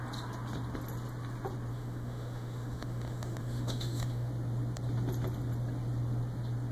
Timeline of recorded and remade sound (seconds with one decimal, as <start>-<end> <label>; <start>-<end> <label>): 0.0-1.7 recorded; 1.7-4.3 remade; 4.3-6.7 recorded